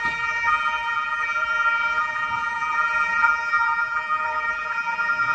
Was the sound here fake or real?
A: fake